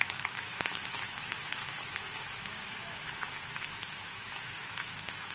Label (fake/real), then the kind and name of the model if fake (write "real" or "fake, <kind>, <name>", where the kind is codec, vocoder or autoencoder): fake, autoencoder, DAC-VAE